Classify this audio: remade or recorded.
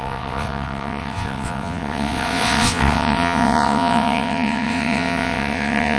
remade